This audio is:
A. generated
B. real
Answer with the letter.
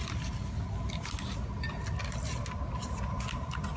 B